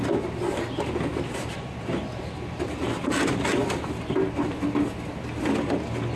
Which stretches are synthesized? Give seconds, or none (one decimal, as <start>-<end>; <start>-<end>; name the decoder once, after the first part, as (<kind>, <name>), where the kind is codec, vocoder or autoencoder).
none